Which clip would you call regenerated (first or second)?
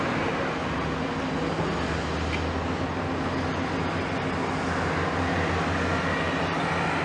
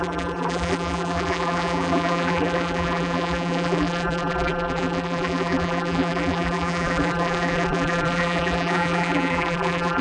second